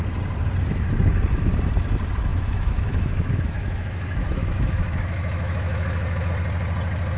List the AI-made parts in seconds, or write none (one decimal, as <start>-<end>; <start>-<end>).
2.3-6.3